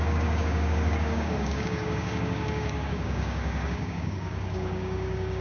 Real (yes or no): no